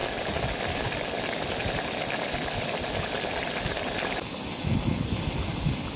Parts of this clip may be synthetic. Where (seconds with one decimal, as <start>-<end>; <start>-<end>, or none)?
none